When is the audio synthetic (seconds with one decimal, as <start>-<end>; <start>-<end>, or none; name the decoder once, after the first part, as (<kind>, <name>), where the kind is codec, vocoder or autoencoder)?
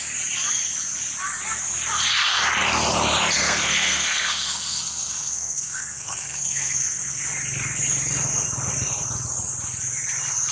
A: 3.4-7.2 (codec, SNAC)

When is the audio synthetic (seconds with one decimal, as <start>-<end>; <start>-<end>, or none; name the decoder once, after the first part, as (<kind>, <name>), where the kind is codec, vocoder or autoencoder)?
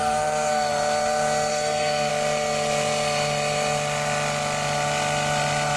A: 0.0-0.7 (codec, SNAC); 1.5-2.1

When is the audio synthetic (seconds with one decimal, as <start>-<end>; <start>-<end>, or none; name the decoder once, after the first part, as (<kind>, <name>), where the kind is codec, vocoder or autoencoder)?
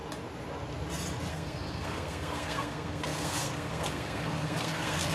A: 1.3-5.1 (codec, SNAC)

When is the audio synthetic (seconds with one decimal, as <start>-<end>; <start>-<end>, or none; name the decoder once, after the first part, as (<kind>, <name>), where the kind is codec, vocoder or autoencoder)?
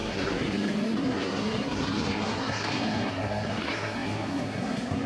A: 0.0-5.1 (codec, SNAC)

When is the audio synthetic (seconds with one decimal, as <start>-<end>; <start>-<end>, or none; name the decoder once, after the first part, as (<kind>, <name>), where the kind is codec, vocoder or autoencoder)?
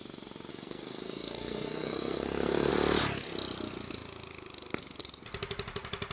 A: 0.5-2.7 (codec, SNAC)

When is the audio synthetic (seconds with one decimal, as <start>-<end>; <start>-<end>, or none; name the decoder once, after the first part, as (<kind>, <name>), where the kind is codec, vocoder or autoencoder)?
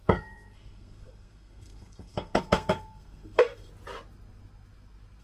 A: 0.0-3.7 (codec, SNAC)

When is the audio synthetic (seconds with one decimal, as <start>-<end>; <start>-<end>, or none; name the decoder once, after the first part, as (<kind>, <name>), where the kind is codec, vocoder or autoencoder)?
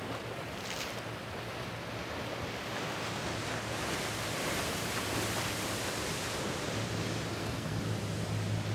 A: 7.3-7.8 (codec, SNAC)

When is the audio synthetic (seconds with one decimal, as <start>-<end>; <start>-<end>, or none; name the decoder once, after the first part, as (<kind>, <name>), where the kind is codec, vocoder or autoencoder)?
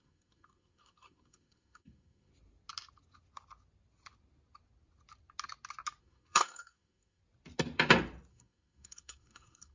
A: 0.0-2.3 (codec, SNAC); 6.0-7.2; 8.3-9.7